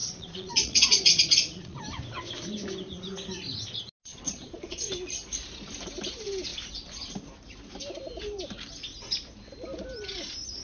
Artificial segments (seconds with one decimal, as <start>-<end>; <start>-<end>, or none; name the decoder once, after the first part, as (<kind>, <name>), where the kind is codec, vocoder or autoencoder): 0.0-1.8 (vocoder, Vocos); 4.1-4.9

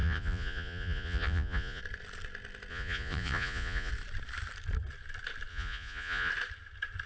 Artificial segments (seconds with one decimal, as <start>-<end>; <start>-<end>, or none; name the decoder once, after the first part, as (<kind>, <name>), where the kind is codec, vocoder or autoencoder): 0.0-1.8 (vocoder, Vocos); 2.7-3.9; 5.5-6.3

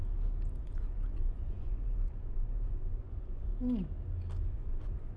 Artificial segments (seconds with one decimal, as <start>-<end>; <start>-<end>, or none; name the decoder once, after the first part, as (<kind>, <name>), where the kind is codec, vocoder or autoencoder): 0.6-3.5 (vocoder, Vocos); 4.4-5.2

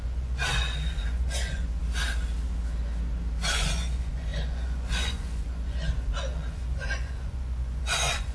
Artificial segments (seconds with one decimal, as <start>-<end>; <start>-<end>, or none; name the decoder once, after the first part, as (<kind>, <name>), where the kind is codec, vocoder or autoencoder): 0.0-1.8 (vocoder, Vocos); 3.5-8.3

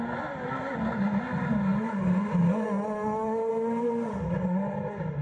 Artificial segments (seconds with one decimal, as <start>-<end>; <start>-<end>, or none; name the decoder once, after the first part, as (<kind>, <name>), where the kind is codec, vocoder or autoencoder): none

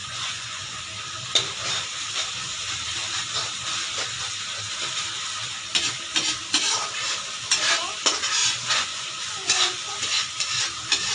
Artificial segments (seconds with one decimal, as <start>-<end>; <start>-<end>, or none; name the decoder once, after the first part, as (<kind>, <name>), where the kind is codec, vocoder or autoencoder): 0.0-0.8 (vocoder, Vocos); 8.4-10.3

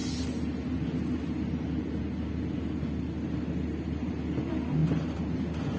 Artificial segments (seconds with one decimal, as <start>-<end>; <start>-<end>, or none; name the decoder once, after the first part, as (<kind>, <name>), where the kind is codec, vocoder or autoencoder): none